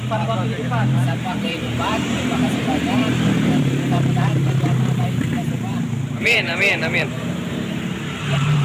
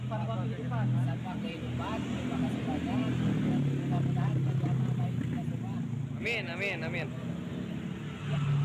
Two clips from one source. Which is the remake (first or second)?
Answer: first